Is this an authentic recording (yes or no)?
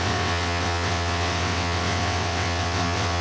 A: no